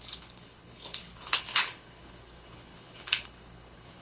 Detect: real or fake fake